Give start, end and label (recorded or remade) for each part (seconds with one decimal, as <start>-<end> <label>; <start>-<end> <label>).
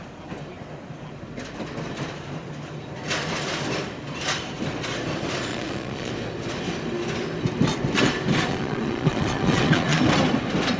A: 0.0-5.5 recorded; 5.5-6.1 remade; 6.1-8.5 recorded; 8.5-10.0 remade; 10.0-10.8 recorded